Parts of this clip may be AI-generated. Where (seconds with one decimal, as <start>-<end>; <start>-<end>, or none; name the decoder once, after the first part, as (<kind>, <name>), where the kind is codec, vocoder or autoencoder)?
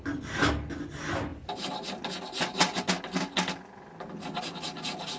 none